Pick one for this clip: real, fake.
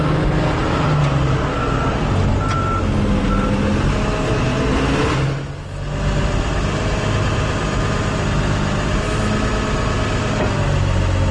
real